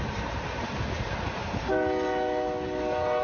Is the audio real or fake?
real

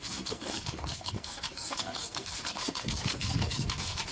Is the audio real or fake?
fake